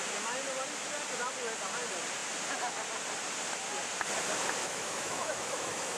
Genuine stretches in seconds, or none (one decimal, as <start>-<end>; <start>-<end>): 0.0-4.6